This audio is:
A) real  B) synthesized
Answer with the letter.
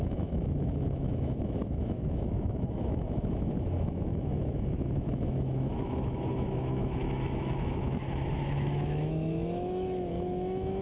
B